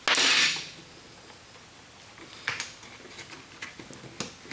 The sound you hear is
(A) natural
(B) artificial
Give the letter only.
A